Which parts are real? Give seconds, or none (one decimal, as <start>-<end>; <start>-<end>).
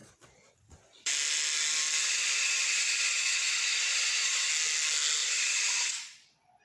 1.1-2.0; 4.5-5.2